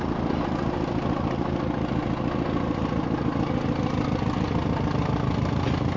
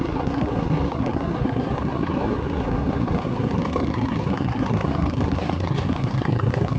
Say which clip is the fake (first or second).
second